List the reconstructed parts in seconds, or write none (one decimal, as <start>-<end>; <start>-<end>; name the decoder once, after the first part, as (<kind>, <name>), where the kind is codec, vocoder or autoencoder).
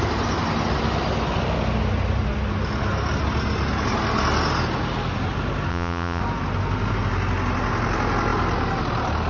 5.7-6.2 (vocoder, WaveNeXt)